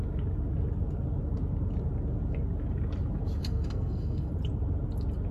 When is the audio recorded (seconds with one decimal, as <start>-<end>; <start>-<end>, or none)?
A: 0.0-3.4; 4.3-5.3